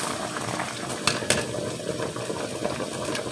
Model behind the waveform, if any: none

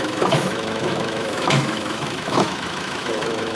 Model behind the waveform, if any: autoencoder, DAC-VAE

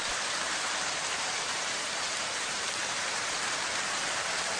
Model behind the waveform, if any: vocoder, BigVGAN v2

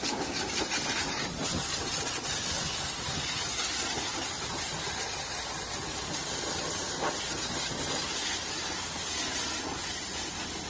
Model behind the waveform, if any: none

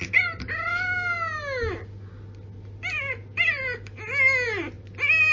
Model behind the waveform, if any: none